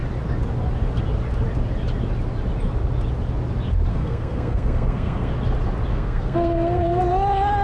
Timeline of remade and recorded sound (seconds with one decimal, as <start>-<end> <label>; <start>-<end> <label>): 0.0-3.9 recorded; 3.9-5.3 remade; 5.3-5.9 recorded; 5.9-7.0 remade; 7.0-7.6 recorded